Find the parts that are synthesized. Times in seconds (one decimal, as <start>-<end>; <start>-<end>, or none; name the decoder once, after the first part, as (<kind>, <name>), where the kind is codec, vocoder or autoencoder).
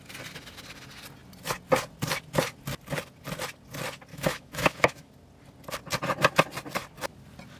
4.1-5.1 (autoencoder, DAC-VAE)